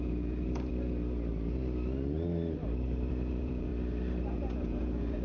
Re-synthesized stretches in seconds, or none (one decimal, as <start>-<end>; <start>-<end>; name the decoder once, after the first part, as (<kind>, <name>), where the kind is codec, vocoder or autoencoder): 0.0-0.7 (vocoder, Vocos); 3.1-3.7; 4.3-5.2